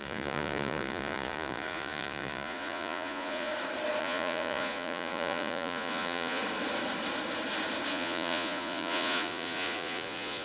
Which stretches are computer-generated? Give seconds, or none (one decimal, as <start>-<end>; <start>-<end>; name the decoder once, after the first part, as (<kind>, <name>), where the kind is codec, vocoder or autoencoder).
0.0-3.5 (vocoder, Vocos); 4.0-6.4; 7.9-10.4